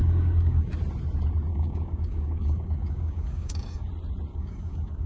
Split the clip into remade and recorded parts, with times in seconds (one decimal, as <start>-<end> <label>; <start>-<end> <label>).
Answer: 0.0-0.7 remade; 0.7-1.5 recorded; 1.5-3.9 remade; 3.9-4.3 recorded; 4.3-5.1 remade

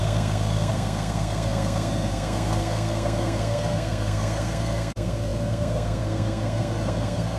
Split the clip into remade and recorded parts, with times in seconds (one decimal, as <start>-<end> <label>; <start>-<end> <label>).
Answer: 0.0-7.4 remade

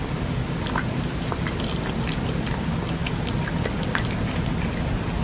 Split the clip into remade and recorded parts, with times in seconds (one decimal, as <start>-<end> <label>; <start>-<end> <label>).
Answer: 0.0-5.2 recorded

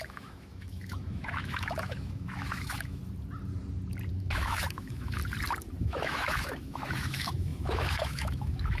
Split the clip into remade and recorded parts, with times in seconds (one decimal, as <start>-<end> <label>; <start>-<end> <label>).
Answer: 0.0-3.0 remade; 3.0-4.1 recorded; 4.1-5.2 remade; 5.2-5.8 recorded; 5.8-8.8 remade

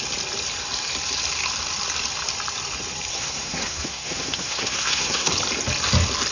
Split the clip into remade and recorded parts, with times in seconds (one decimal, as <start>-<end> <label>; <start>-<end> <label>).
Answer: 0.0-3.1 recorded; 3.1-5.3 remade; 5.3-6.3 recorded

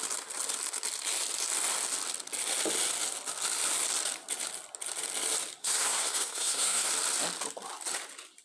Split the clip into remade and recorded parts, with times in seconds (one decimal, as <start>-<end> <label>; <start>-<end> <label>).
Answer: 0.0-5.6 recorded; 5.6-6.9 remade; 6.9-8.4 recorded